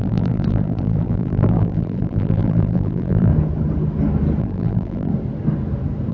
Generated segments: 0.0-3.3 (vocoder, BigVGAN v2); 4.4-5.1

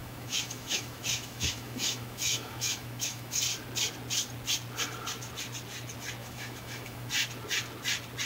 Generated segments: 0.0-3.4 (autoencoder, DAC-VAE); 6.2-7.1